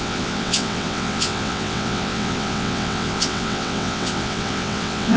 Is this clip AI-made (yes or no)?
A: yes